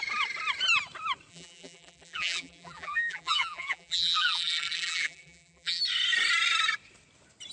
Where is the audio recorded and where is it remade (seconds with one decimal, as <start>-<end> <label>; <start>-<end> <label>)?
0.0-1.3 recorded; 1.3-5.8 remade; 5.8-7.5 recorded